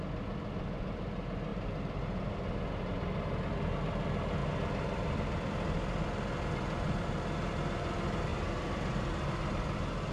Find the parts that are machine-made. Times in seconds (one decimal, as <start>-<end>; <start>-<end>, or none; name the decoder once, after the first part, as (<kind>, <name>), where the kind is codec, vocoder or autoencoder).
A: 1.5-2.0 (vocoder, BigVGAN v2); 4.4-6.0; 8.3-9.3